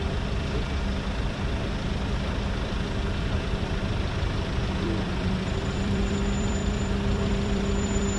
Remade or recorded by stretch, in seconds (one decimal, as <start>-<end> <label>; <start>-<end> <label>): 0.0-8.2 remade